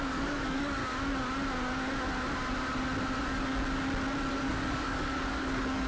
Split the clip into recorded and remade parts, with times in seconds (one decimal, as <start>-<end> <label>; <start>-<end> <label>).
0.0-0.8 remade; 0.8-4.3 recorded; 4.3-5.9 remade